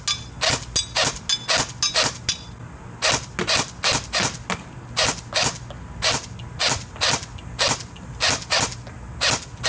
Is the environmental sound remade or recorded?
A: recorded